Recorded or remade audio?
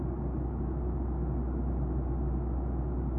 recorded